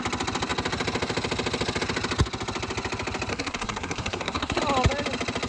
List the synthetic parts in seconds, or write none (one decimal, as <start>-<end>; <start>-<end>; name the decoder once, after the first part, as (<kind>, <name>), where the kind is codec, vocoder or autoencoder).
3.3-4.6 (codec, SNAC)